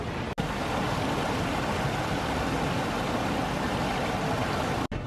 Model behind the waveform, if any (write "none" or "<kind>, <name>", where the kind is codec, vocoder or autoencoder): none